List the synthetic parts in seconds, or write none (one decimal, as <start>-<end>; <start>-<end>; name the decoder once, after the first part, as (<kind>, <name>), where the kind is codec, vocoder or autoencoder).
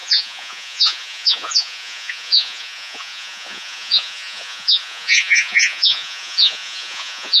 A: 0.0-7.4 (vocoder, Vocos)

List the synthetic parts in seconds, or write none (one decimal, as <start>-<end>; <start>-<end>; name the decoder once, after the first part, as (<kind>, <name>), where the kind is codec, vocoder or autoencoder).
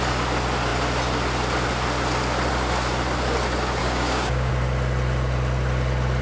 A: 3.8-4.5 (codec, DAC)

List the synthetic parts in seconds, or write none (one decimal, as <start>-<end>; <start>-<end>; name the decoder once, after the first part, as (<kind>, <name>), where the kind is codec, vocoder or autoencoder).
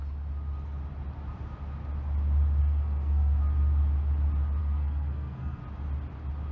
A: 2.6-3.4 (codec, SNAC); 4.6-5.6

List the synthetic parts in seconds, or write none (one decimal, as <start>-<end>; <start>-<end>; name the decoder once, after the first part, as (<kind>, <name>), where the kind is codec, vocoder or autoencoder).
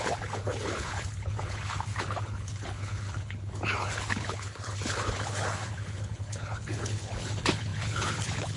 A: 0.0-8.6 (codec, HILCodec)